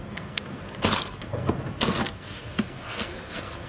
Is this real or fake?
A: fake